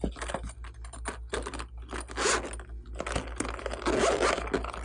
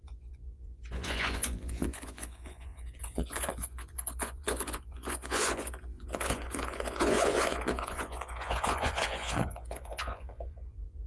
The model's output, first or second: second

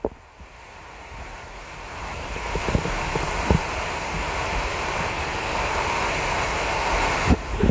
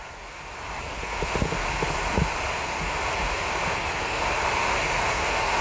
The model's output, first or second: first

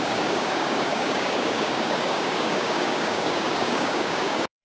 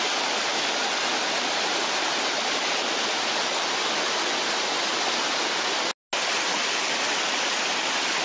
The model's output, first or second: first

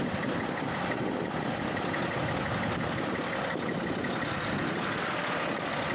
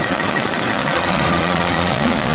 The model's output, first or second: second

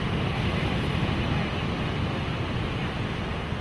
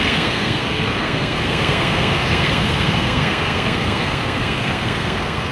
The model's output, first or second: second